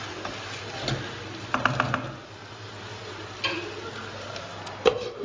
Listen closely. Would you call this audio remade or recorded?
recorded